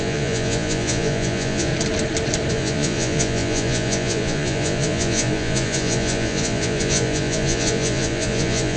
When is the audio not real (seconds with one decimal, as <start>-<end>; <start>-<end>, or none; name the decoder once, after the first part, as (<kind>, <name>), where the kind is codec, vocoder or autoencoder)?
0.0-1.7 (vocoder, Vocos); 2.5-8.8